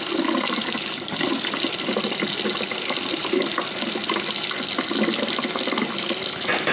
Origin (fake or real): real